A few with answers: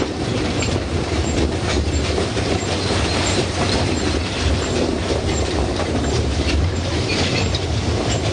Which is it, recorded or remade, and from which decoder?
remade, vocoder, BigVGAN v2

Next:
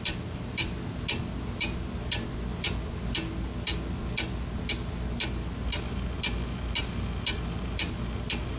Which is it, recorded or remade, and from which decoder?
recorded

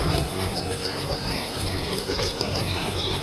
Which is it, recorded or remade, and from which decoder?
remade, codec, SNAC